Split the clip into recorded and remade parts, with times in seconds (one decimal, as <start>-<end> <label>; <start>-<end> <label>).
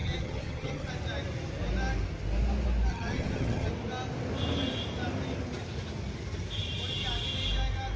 0.0-0.9 remade; 0.9-2.9 recorded; 2.9-3.7 remade; 3.7-8.0 recorded